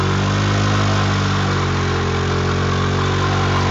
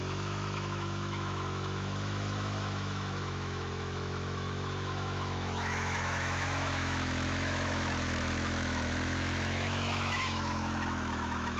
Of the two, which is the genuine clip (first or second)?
first